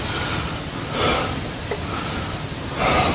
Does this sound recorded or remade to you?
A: recorded